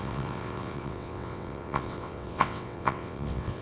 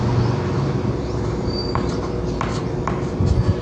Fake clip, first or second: first